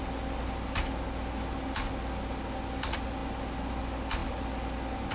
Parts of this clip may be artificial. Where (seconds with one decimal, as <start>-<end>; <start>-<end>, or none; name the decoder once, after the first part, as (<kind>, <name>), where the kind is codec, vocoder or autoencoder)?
none